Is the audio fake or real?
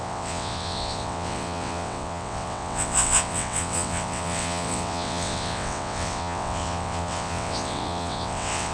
fake